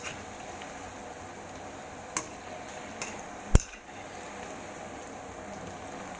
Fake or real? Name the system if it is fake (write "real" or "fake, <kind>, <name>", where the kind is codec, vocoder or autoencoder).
real